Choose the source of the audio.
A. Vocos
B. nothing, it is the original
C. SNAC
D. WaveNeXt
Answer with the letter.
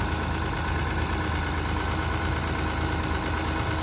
B